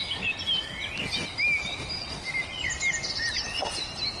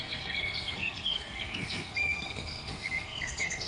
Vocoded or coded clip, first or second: second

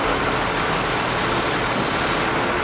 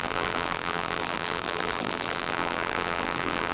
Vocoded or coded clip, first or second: second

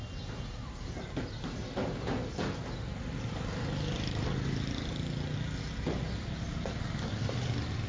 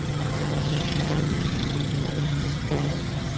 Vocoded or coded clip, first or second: second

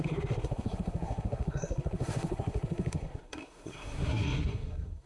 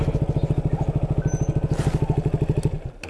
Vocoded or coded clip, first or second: first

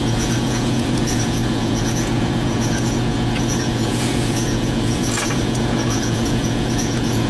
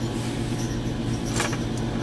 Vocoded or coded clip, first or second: first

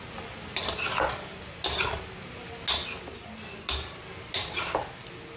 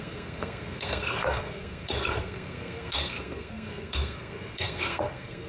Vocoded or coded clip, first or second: second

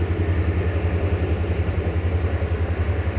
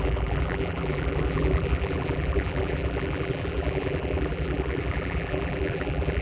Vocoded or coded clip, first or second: second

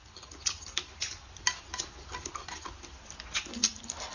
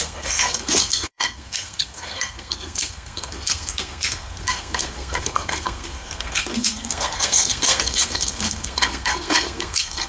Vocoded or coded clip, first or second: second